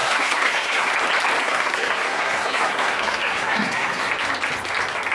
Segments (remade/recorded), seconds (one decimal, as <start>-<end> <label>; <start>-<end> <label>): 0.0-0.9 remade; 0.9-1.4 recorded; 1.4-4.1 remade; 4.1-5.1 recorded